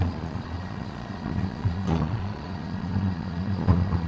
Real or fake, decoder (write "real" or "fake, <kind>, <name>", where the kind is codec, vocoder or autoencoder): fake, vocoder, Vocos